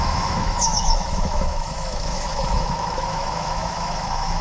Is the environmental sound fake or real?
fake